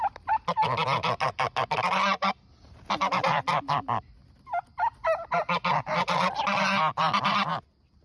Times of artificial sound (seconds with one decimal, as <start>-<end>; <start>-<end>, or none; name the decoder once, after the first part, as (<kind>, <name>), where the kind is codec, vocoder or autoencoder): none